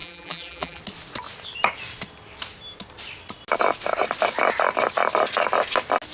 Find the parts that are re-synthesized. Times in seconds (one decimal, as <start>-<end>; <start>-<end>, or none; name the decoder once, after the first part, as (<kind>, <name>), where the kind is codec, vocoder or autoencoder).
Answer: 0.0-0.8 (vocoder, BigVGAN v2)